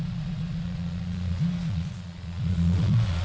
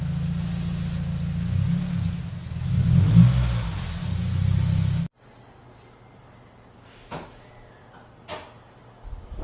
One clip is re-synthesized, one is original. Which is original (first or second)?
second